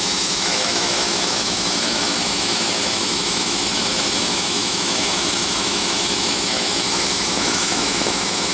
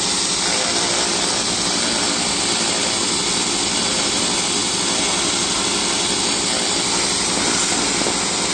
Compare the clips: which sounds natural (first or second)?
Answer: second